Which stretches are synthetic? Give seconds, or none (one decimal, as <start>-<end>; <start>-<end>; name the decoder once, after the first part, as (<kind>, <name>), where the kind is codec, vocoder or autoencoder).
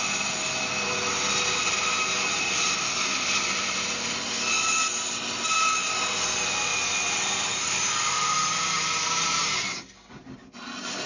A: none